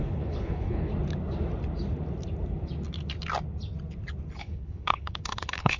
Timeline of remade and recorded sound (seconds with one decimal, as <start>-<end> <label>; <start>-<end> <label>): 0.0-0.9 remade; 0.9-4.4 recorded; 4.4-5.8 remade